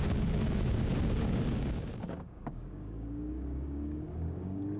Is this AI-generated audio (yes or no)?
yes